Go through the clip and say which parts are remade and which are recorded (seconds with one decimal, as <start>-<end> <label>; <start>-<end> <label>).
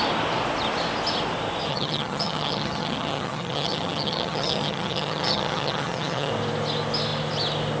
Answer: 0.0-1.7 recorded; 1.7-6.3 remade; 6.3-7.8 recorded